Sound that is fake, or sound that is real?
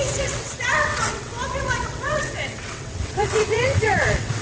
fake